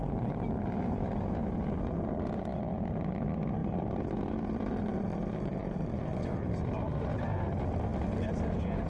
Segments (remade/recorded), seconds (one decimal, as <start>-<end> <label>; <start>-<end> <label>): 0.0-8.9 recorded